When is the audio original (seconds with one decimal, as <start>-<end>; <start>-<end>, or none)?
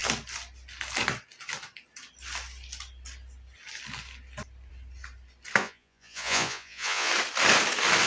0.0-5.6; 7.1-8.1